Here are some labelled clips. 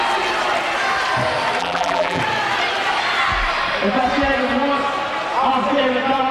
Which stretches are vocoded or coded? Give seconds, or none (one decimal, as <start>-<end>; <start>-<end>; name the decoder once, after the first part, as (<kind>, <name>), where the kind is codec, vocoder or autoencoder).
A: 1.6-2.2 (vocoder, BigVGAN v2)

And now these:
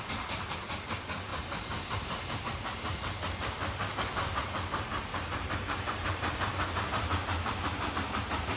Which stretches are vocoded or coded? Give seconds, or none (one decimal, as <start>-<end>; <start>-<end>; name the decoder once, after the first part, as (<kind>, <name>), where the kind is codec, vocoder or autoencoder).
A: 1.3-2.4 (vocoder, BigVGAN v2); 5.1-7.9

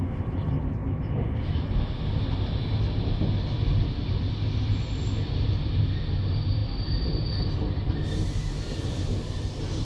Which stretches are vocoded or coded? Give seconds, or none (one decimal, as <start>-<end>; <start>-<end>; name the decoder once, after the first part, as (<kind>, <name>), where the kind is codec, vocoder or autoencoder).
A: none

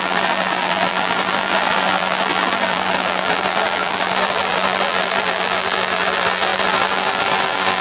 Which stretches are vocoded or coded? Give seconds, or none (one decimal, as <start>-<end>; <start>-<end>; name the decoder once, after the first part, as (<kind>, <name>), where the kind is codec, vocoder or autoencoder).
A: 0.0-7.8 (vocoder, BigVGAN v2)